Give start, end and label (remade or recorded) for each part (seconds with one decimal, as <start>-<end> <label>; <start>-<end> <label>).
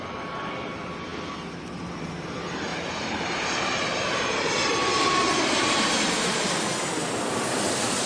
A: 0.0-2.7 recorded; 2.7-6.5 remade; 6.5-8.1 recorded